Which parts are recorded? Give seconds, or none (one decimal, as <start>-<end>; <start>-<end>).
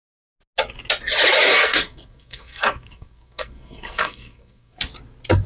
0.0-1.5; 4.8-5.5